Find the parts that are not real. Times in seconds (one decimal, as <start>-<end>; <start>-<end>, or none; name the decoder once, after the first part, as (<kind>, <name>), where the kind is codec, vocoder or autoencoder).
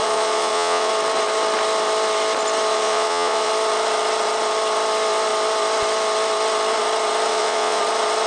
0.0-0.9 (vocoder, Vocos); 2.7-3.5; 7.3-7.8